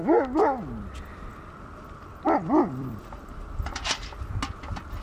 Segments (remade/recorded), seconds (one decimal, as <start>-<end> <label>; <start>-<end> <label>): 0.0-1.3 recorded; 1.3-4.3 remade; 4.3-5.0 recorded